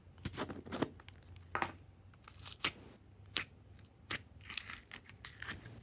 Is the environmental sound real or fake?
real